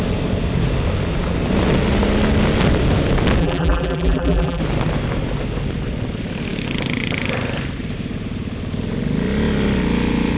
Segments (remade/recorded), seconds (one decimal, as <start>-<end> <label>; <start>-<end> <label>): 0.0-3.4 recorded; 3.4-4.6 remade; 4.6-10.4 recorded